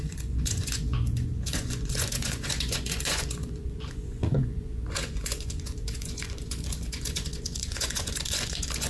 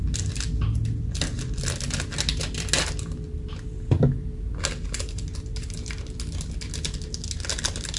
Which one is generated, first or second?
first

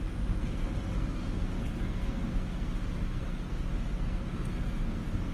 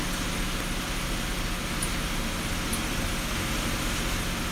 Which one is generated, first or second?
first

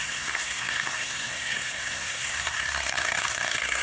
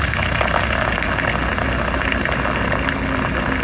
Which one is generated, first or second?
first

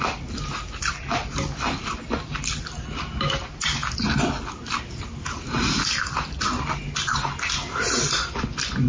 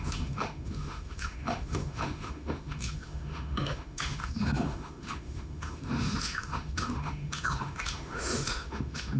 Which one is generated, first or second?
second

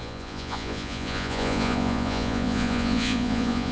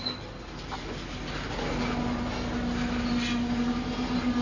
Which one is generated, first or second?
first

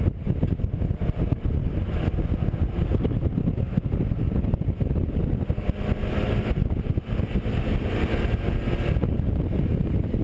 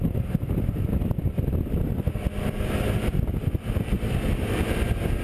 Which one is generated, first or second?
second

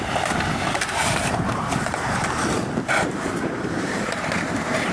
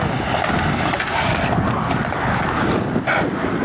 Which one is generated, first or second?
first